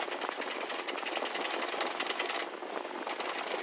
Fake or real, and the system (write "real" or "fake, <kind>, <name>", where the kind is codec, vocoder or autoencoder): real